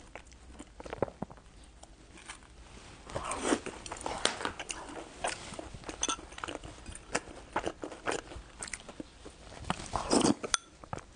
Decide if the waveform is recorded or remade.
recorded